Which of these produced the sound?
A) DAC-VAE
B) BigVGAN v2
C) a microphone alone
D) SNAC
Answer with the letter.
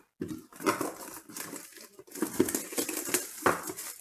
C